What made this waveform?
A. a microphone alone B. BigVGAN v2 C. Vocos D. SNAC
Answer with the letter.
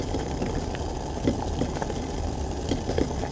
A